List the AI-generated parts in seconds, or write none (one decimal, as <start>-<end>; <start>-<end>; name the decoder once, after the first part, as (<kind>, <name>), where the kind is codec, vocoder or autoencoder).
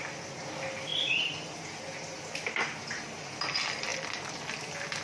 0.9-1.5 (vocoder, BigVGAN v2); 3.9-4.5